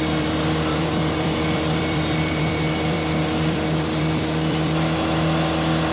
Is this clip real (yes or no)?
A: no